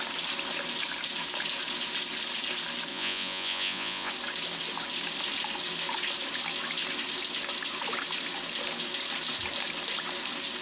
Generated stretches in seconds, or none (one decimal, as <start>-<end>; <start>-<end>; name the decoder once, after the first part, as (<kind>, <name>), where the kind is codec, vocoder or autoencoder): 2.9-4.1 (vocoder, Vocos)